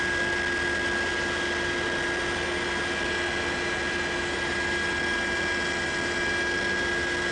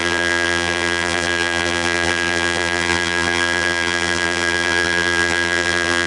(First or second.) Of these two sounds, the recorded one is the first